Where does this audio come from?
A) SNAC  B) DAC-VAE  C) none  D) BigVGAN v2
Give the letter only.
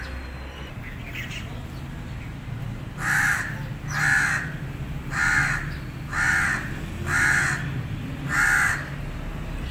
C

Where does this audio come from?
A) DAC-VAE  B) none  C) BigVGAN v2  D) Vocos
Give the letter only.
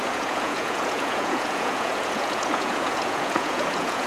D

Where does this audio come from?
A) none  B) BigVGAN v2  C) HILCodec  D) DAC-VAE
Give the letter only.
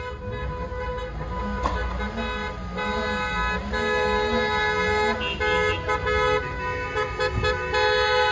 A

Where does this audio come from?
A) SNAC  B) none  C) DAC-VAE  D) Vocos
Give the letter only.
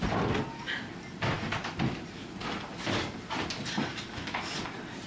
B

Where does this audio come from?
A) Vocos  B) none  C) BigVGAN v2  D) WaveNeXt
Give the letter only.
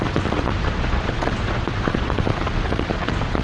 A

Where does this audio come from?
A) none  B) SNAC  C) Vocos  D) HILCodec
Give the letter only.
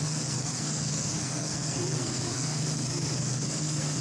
B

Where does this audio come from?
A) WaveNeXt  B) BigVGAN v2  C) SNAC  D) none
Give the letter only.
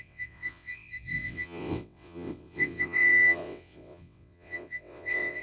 A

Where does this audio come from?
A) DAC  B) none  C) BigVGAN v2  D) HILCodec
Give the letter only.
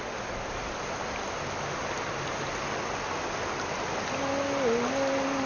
B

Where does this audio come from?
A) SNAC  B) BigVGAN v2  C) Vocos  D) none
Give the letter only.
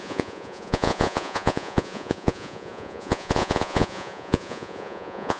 C